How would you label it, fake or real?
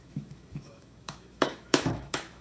fake